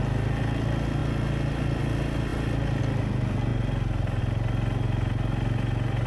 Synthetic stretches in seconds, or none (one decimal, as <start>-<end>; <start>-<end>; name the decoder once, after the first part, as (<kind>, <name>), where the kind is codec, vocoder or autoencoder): none

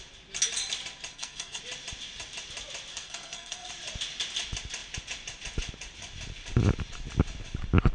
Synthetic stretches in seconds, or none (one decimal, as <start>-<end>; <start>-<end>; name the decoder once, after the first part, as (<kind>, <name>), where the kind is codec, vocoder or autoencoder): 1.1-1.6 (codec, SNAC); 2.9-3.7

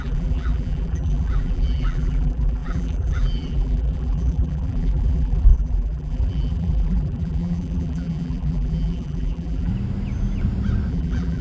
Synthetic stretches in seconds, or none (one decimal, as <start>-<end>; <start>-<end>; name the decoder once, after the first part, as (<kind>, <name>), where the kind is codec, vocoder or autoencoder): 0.0-9.7 (vocoder, BigVGAN v2); 10.9-11.4

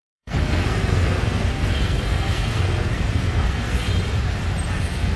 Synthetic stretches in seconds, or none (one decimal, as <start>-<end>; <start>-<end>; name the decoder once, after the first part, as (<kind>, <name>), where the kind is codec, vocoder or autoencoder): 0.0-3.9 (codec, SNAC); 4.7-5.2

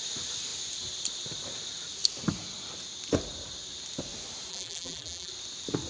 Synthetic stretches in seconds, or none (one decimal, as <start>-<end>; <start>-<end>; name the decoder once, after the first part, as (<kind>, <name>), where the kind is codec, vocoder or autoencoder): 4.5-5.3 (vocoder, BigVGAN v2)

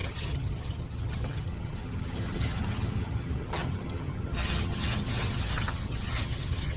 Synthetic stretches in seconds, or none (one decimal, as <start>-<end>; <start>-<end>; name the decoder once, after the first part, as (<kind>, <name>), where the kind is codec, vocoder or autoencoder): 0.0-6.8 (vocoder, HiFi-GAN)